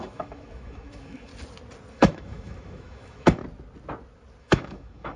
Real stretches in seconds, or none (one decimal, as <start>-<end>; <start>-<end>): 1.3-1.9; 3.4-4.4